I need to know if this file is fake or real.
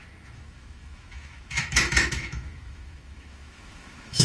fake